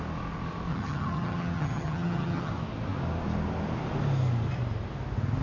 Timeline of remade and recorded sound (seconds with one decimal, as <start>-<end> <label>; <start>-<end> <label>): 0.0-0.7 recorded; 0.7-2.5 remade; 2.5-5.4 recorded